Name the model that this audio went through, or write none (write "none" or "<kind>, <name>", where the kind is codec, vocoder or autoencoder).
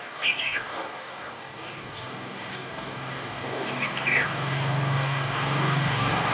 codec, DAC